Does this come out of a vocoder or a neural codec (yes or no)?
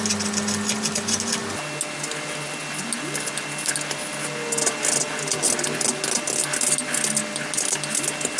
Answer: no